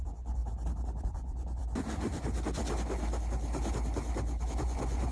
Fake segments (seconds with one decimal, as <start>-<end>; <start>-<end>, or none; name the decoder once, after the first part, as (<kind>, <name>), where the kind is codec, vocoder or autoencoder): 0.0-0.4 (vocoder, Vocos); 1.0-1.6; 4.6-5.1